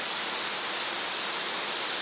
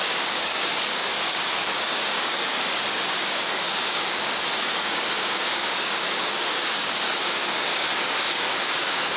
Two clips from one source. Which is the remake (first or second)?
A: second